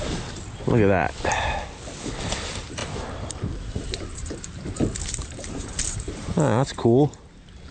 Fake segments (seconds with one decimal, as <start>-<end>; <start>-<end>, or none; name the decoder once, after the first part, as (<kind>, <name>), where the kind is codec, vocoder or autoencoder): 2.8-7.2 (vocoder, BigVGAN v2)